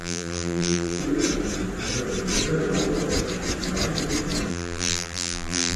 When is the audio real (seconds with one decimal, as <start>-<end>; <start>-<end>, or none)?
1.0-4.5